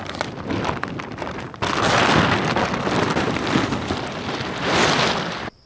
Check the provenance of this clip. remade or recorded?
recorded